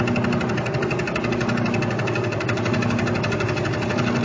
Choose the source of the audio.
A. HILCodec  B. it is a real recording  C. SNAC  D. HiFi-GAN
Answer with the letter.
B